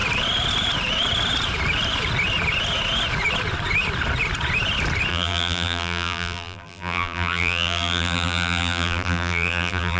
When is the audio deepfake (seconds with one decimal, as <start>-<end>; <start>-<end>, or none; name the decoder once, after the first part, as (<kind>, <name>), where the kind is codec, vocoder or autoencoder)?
5.1-10.0 (vocoder, BigVGAN v2)